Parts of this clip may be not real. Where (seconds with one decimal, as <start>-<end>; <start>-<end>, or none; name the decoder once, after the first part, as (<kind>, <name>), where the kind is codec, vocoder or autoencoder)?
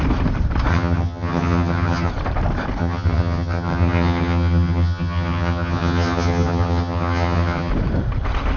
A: 0.7-2.1 (vocoder, HiFi-GAN); 2.8-7.7